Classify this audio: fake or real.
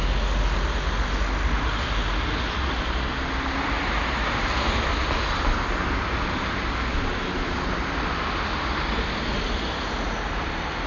real